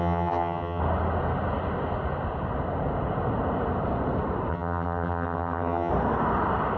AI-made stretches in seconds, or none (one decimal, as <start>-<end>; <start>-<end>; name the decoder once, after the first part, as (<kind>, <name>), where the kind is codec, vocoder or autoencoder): 0.0-0.8 (vocoder, HiFi-GAN); 4.5-5.9